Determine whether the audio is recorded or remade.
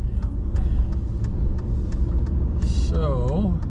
recorded